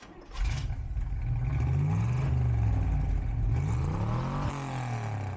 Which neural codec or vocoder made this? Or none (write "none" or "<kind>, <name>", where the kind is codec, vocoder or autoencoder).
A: none